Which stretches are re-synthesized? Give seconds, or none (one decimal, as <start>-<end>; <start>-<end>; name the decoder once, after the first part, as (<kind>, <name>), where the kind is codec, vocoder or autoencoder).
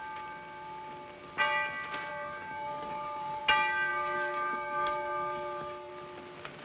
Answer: 2.1-3.4 (codec, DAC); 3.9-5.9